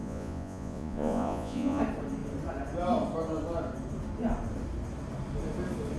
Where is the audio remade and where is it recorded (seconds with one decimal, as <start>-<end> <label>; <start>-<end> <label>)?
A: 0.0-1.8 remade; 1.8-6.0 recorded